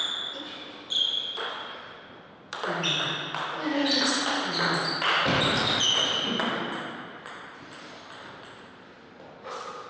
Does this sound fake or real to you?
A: real